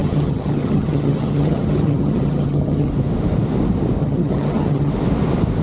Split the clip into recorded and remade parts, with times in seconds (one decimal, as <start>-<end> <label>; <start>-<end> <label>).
0.0-2.9 remade; 2.9-4.0 recorded; 4.0-4.9 remade; 4.9-5.6 recorded